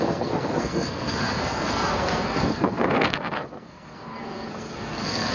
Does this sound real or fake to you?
fake